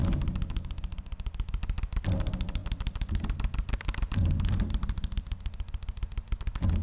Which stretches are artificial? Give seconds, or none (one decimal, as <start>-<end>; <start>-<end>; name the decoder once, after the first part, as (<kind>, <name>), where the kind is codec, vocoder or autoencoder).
none